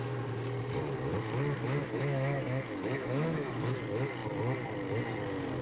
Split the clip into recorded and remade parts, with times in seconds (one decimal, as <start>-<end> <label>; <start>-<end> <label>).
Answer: 0.0-1.8 recorded; 1.8-3.8 remade; 3.8-5.6 recorded